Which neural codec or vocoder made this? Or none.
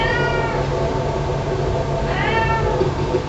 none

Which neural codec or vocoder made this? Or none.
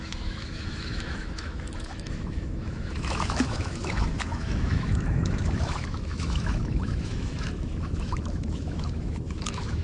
autoencoder, DAC-VAE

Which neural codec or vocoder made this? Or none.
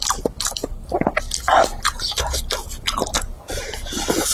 none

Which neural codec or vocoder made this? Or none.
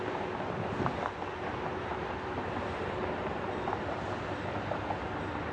none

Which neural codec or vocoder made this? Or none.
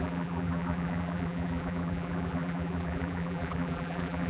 vocoder, BigVGAN v2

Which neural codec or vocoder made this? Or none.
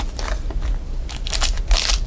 none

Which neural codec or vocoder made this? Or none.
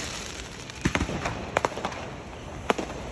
vocoder, BigVGAN v2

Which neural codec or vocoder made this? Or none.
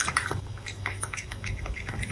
codec, DAC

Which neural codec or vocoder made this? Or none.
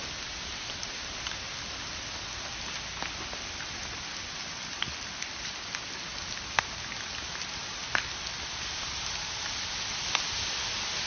none